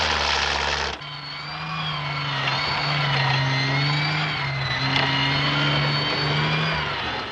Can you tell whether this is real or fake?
real